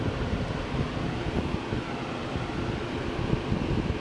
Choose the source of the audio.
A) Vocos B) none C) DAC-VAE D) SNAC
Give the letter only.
B